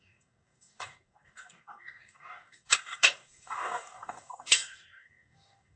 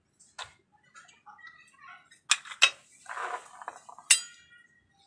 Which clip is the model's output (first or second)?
first